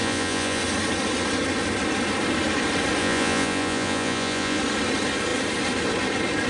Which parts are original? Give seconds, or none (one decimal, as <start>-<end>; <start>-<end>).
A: 0.6-3.0; 4.6-6.5